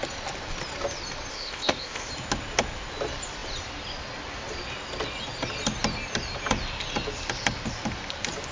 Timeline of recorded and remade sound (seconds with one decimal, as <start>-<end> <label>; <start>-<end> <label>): 0.0-1.3 recorded; 1.3-2.1 remade; 2.1-8.5 recorded